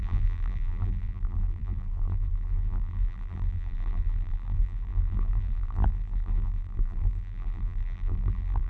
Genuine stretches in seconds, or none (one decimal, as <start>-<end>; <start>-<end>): none